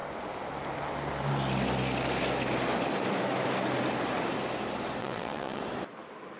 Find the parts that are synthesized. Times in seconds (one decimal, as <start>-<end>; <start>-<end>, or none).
5.0-5.6

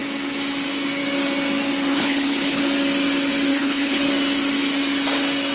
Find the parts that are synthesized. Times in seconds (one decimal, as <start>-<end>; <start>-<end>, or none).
1.9-2.6; 3.5-4.0